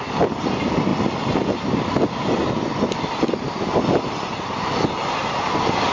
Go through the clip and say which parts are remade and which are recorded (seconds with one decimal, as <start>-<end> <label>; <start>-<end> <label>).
0.0-5.9 recorded

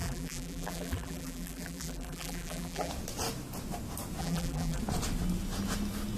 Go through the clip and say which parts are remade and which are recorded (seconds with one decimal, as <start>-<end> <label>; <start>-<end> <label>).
0.0-2.9 remade; 2.9-4.2 recorded; 4.2-4.8 remade; 4.8-6.2 recorded

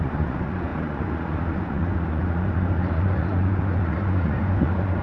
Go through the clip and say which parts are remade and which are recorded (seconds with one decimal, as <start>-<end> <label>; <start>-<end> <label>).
0.0-5.0 remade

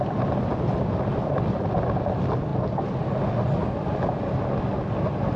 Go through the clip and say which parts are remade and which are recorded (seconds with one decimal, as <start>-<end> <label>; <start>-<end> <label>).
0.0-5.4 recorded

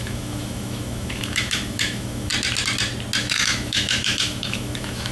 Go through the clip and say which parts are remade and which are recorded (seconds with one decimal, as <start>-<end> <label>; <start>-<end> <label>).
0.0-2.3 remade; 2.3-3.2 recorded; 3.2-5.1 remade

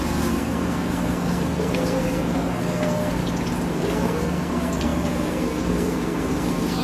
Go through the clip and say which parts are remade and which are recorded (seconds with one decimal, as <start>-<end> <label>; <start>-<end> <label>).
0.0-3.2 remade; 3.2-3.7 recorded; 3.7-6.8 remade

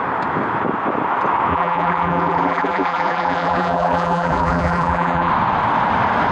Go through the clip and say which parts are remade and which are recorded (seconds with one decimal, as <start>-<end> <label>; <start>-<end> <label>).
0.0-1.5 recorded; 1.5-5.3 remade; 5.3-6.3 recorded